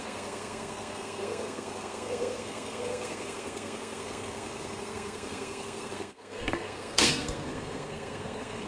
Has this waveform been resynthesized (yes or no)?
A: yes